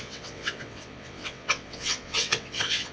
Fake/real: fake